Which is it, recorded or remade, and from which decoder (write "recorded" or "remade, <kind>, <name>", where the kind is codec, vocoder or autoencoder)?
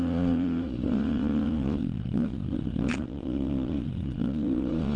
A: remade, vocoder, Vocos